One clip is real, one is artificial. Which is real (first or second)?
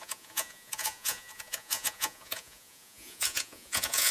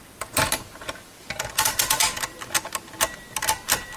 second